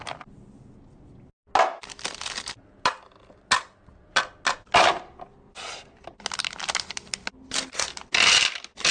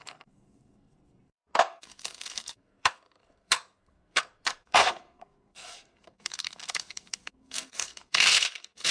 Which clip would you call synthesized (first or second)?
second